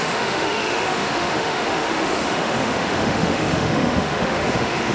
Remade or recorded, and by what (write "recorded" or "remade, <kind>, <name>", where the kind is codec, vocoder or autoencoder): remade, autoencoder, DAC-VAE